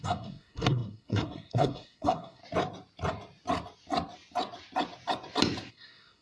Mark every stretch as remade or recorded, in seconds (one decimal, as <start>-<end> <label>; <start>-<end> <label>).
0.0-2.4 remade; 2.4-5.7 recorded; 5.7-6.2 remade